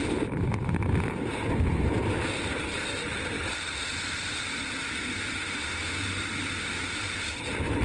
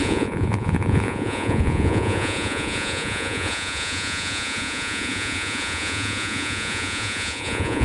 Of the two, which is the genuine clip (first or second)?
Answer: first